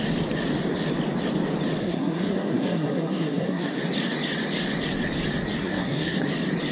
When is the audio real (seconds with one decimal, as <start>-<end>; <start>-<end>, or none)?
0.0-1.8; 3.8-5.6; 6.3-6.7